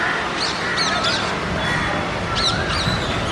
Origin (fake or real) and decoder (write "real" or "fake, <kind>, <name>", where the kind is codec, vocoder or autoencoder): real